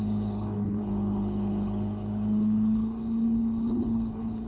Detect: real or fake fake